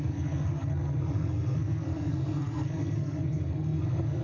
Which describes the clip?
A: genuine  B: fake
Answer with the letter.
B